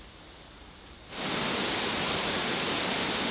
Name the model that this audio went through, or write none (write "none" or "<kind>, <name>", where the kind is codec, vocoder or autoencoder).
none